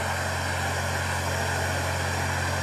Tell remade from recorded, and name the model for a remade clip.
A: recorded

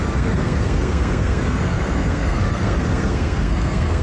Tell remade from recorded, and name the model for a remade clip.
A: remade, codec, SNAC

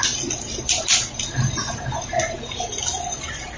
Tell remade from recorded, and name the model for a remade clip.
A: recorded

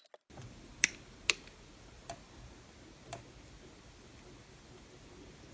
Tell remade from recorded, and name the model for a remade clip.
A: recorded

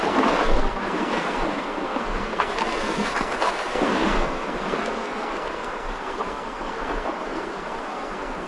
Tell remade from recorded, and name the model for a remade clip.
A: remade, codec, SNAC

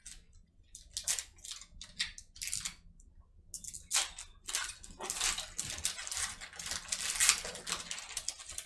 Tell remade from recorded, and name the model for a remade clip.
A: recorded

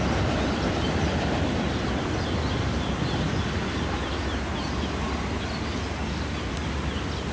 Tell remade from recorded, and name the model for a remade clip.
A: recorded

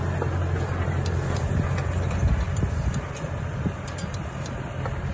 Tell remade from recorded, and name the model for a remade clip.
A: recorded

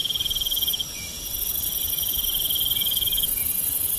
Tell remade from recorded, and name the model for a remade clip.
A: recorded